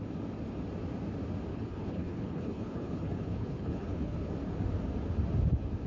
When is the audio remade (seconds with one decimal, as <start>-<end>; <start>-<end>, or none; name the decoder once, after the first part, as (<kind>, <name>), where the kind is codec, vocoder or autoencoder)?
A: 1.5-4.3 (codec, HILCodec)